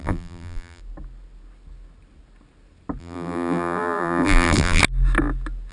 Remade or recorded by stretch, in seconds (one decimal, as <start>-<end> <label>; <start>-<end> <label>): 0.0-0.8 remade; 0.8-3.0 recorded; 3.0-4.8 remade; 4.8-5.7 recorded